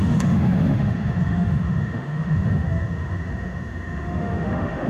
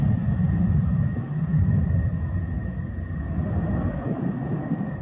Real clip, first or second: second